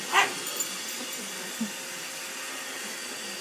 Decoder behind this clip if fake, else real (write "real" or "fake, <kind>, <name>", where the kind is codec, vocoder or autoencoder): real